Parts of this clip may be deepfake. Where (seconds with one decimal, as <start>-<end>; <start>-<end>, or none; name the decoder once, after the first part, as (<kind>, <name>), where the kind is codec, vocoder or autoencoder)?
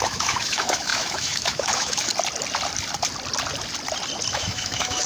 0.0-2.1 (autoencoder, DAC-VAE); 4.3-5.1